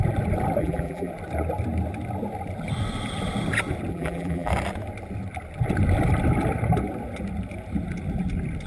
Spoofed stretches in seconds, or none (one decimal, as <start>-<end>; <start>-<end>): 0.6-1.1; 3.9-4.5